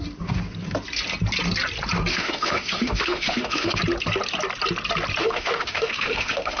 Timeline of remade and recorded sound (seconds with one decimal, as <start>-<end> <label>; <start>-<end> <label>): 0.0-2.1 recorded; 2.1-3.8 remade; 3.8-5.2 recorded; 5.2-6.6 remade